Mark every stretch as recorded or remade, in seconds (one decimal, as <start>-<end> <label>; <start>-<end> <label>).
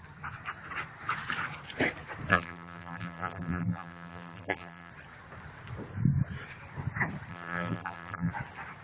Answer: 0.0-2.3 recorded; 2.3-4.9 remade; 4.9-7.3 recorded; 7.3-8.3 remade; 8.3-8.8 recorded